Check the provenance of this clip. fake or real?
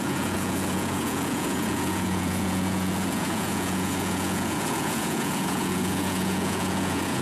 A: fake